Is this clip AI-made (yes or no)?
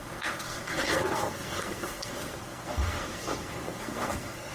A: yes